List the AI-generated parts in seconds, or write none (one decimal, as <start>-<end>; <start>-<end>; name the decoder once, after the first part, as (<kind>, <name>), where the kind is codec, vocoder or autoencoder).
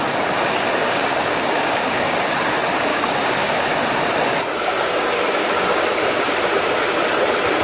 0.8-2.2 (codec, DAC); 2.9-3.6; 4.7-6.3